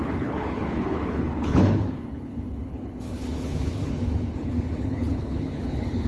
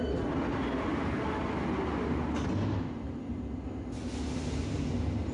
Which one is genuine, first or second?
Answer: second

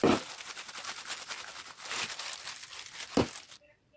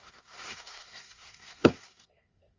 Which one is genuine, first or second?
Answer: first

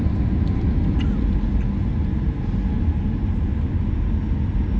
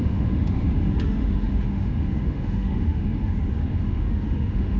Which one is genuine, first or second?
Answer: first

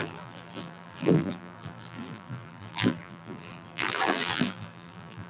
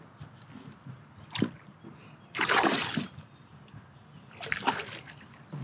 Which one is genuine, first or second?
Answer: second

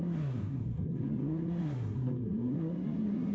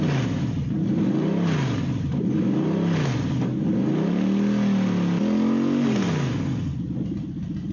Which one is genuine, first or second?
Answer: second